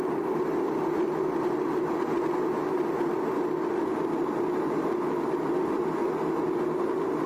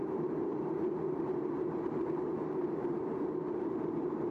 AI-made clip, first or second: second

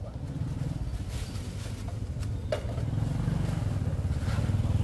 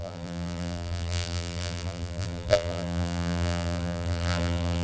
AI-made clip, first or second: second